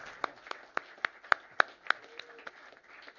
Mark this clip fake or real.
real